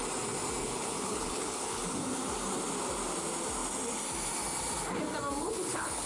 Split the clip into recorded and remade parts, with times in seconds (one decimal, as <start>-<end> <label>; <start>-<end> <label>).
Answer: 0.0-0.6 recorded; 0.6-1.8 remade; 1.8-5.4 recorded; 5.4-6.1 remade